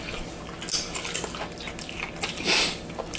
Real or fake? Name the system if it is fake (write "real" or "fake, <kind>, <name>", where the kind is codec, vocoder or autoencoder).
real